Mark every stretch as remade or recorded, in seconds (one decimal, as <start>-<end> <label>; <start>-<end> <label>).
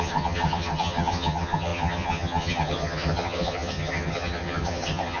0.0-5.2 remade